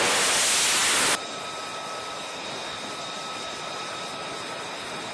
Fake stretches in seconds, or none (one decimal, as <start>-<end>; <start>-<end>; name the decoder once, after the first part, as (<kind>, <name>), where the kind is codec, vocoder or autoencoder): none